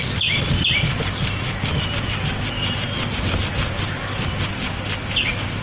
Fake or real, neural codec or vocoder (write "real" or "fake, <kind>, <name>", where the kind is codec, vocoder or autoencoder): real